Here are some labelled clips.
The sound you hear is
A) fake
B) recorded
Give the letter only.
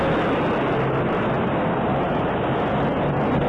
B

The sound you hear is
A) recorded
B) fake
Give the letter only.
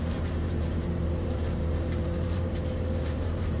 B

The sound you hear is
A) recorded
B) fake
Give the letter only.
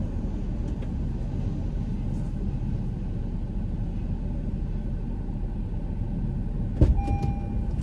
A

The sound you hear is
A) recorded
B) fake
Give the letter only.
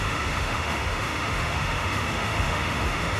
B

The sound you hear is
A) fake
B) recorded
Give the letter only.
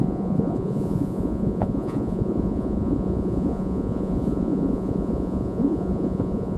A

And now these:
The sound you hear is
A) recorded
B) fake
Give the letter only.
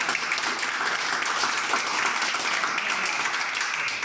A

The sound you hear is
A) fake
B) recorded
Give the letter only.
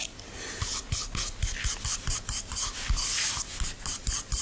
B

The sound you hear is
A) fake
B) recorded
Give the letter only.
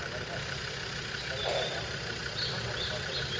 B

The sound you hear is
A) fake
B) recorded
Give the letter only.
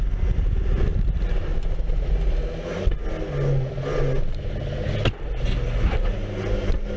B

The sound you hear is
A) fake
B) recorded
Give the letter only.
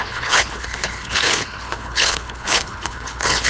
A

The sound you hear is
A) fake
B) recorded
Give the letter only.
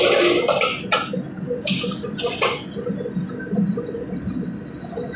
B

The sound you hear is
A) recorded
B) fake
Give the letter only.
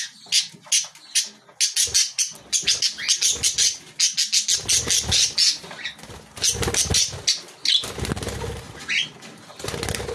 A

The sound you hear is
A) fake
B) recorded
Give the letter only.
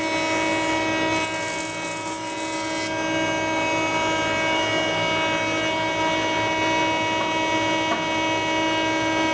B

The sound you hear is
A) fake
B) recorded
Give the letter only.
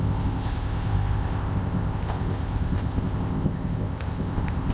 A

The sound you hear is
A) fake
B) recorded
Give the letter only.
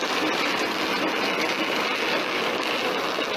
B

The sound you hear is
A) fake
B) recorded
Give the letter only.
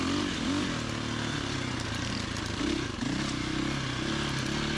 B